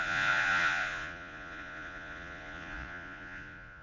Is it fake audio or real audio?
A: fake